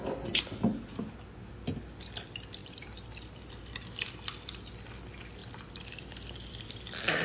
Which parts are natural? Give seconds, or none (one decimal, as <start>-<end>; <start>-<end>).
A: 0.0-2.6; 3.6-5.4; 6.6-7.2